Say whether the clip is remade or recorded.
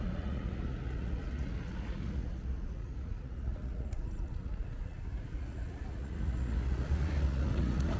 remade